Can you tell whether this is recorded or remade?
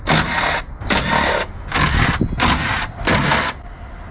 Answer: recorded